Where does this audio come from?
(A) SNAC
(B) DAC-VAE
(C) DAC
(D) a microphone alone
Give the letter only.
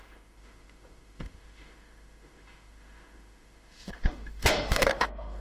B